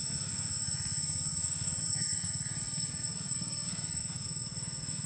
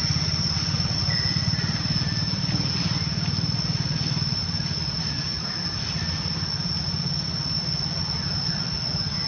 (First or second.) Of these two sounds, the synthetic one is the first